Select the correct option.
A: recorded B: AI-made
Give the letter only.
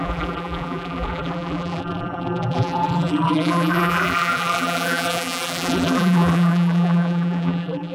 B